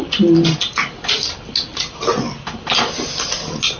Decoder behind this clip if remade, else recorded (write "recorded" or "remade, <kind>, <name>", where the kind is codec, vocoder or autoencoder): recorded